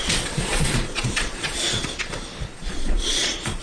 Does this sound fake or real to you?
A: fake